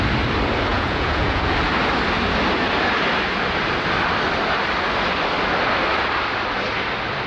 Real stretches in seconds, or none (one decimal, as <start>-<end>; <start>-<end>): 0.0-0.7; 1.5-7.3